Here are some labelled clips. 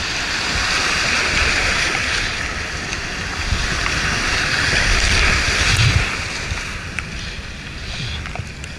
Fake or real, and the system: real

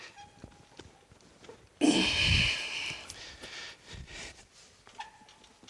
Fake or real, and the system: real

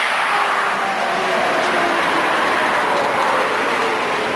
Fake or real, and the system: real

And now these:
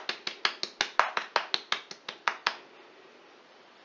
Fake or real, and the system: real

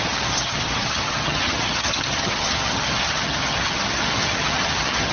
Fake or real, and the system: fake, vocoder, HiFi-GAN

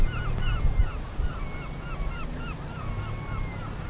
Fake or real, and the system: real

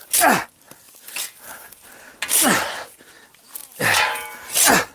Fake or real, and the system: real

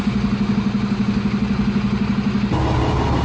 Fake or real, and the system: real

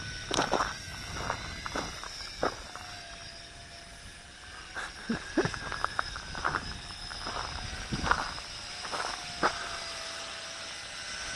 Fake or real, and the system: real